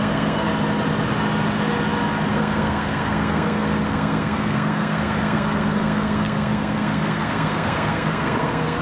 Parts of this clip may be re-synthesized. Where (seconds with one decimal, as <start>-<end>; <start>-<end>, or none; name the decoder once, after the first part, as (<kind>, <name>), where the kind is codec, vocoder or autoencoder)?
0.0-0.5 (codec, SNAC); 2.3-8.8

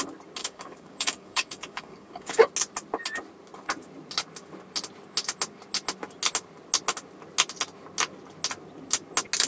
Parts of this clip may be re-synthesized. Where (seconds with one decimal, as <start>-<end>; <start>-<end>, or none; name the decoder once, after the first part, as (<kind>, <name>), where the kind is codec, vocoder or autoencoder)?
0.4-2.5 (codec, DAC)

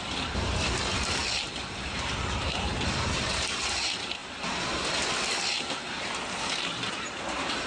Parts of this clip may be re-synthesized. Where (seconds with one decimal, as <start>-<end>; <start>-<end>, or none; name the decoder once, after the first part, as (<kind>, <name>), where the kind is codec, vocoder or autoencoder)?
1.2-2.7 (vocoder, BigVGAN v2)